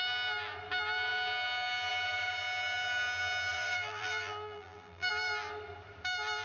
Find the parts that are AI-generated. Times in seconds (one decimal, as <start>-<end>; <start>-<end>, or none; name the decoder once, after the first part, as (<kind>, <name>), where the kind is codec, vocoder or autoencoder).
3.5-5.1 (vocoder, BigVGAN v2)